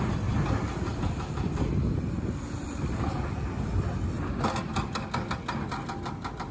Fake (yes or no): no